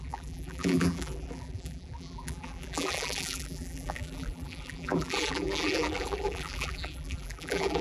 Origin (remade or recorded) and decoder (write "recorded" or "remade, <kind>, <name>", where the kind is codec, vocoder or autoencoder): remade, vocoder, BigVGAN v2